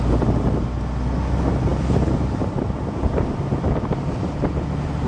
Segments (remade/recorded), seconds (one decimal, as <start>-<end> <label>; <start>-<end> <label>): 0.0-5.1 recorded